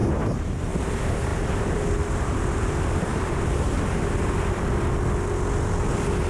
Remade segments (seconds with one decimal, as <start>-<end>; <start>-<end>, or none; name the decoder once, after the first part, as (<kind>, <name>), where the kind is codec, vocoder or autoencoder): 0.0-0.7 (vocoder, BigVGAN v2); 1.3-1.8; 3.1-3.7